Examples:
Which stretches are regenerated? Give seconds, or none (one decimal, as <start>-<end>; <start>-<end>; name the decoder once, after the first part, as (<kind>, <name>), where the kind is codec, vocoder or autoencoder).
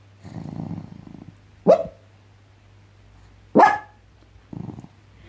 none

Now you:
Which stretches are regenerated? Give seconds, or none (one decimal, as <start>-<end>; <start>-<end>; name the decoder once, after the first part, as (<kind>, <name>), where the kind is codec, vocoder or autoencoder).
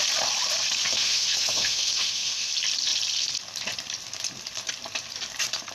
0.8-2.5 (autoencoder, DAC-VAE)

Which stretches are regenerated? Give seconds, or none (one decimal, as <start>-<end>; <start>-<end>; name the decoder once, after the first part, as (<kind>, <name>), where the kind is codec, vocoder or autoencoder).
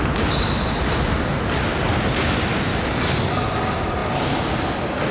2.7-3.4 (codec, DAC)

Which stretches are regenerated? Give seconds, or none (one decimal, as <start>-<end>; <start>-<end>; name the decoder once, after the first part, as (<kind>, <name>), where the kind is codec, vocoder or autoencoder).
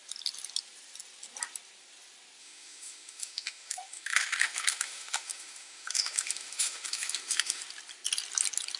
2.4-7.6 (autoencoder, DAC-VAE)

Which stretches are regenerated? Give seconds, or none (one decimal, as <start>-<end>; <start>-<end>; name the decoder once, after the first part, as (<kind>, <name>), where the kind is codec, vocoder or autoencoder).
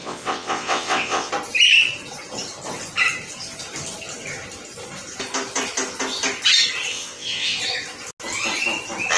0.0-1.3 (vocoder, WaveNeXt); 6.9-7.6